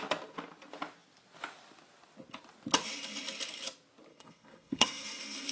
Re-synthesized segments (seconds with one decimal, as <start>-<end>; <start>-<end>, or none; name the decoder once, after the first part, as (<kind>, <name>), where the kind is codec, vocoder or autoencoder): 4.1-5.5 (codec, SNAC)